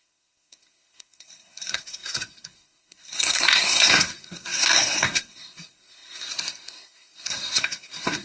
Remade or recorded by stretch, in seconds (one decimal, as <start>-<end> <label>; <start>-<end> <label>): 0.0-8.2 remade